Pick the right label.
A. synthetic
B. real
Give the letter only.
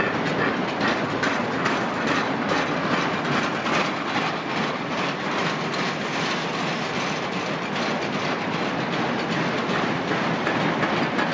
B